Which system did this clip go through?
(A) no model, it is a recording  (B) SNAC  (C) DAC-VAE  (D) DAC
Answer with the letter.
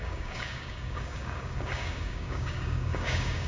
D